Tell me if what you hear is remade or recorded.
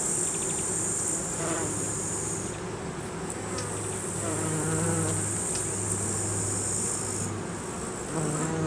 recorded